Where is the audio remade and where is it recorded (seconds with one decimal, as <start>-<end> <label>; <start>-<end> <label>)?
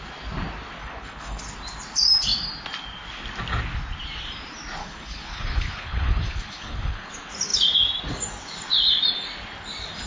0.0-0.8 recorded; 0.8-1.4 remade; 1.4-4.8 recorded; 4.8-7.1 remade; 7.1-10.1 recorded